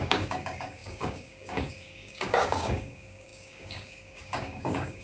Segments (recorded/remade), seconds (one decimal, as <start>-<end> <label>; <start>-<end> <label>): 0.0-5.0 remade